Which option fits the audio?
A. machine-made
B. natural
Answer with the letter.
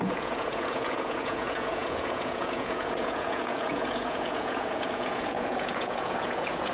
A